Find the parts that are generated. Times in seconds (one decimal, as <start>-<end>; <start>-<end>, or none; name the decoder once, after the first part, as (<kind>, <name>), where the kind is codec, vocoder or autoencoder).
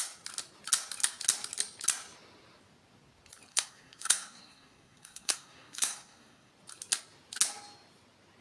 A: 3.5-6.5 (codec, SNAC)